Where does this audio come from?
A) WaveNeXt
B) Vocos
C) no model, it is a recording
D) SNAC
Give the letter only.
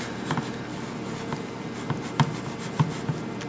C